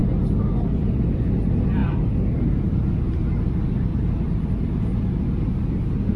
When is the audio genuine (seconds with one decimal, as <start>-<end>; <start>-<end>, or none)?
0.0-1.8; 3.0-3.9; 5.0-6.2